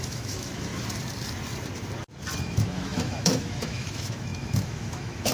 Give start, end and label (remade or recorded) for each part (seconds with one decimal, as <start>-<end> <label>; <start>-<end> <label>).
0.0-0.7 remade; 0.7-2.4 recorded; 2.4-5.3 remade